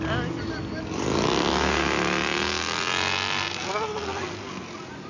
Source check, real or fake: real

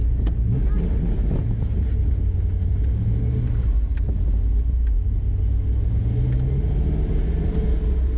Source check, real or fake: real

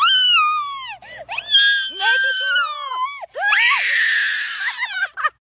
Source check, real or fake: real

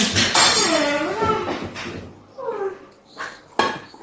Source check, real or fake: real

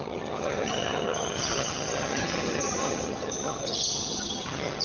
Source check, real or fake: fake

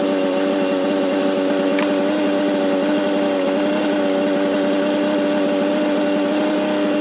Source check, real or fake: real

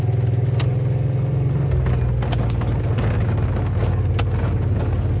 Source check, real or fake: real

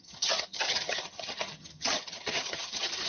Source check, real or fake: fake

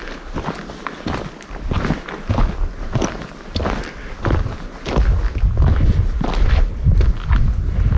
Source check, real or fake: real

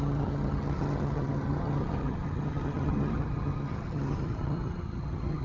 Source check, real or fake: fake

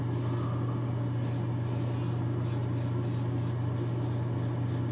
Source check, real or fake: real